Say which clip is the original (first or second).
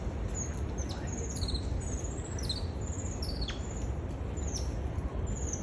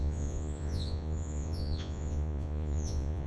first